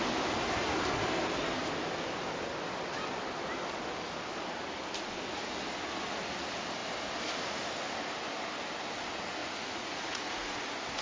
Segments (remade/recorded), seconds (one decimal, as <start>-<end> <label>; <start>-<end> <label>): 0.0-9.4 recorded; 9.4-10.6 remade; 10.6-11.0 recorded